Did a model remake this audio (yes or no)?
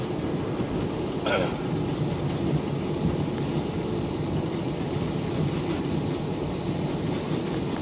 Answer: no